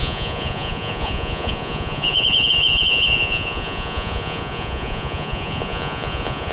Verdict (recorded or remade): remade